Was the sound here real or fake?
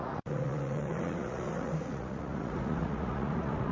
fake